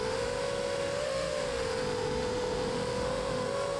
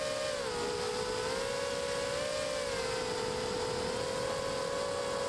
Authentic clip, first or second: second